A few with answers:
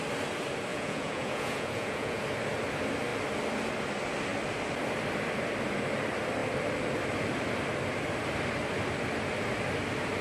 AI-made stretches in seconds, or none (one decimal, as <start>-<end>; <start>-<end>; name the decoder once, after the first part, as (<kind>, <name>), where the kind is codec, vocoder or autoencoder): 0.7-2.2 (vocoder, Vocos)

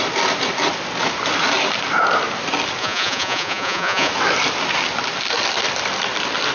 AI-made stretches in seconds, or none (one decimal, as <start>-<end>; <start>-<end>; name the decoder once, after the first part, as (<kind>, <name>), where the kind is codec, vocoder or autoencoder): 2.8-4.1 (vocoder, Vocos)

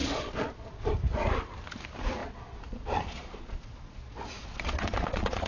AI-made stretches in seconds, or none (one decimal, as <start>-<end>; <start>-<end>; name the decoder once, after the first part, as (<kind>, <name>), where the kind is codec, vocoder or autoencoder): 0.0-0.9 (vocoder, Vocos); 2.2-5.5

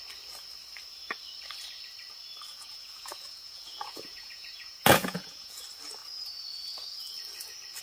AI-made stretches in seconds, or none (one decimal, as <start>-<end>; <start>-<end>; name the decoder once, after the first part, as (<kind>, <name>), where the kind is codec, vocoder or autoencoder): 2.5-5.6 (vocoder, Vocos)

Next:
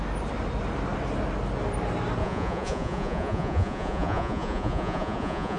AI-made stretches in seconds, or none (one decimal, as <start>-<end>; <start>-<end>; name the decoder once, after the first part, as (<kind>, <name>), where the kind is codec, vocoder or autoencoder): 2.2-5.6 (vocoder, Vocos)